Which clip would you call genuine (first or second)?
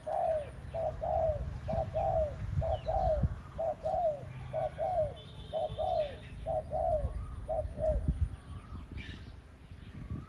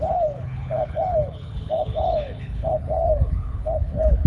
first